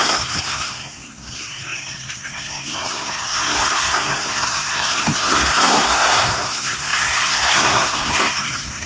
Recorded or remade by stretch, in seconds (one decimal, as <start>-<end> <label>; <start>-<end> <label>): 0.0-8.9 remade